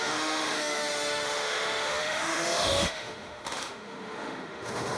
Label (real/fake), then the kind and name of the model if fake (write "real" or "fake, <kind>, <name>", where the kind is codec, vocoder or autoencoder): fake, autoencoder, DAC-VAE